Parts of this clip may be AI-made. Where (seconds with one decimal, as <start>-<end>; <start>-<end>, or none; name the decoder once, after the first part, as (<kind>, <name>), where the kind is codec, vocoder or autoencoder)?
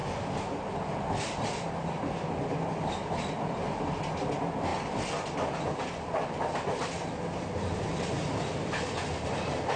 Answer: none